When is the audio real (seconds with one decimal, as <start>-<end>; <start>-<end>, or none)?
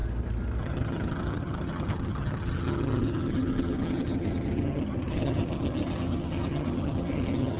0.0-0.6